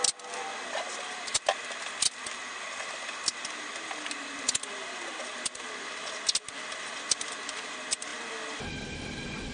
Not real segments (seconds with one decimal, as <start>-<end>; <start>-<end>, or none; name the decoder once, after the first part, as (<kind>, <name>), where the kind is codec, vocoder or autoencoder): none